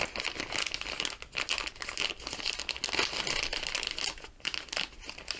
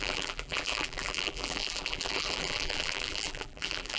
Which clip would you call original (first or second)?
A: first